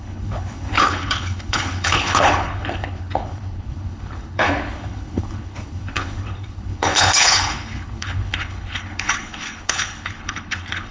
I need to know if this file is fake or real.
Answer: fake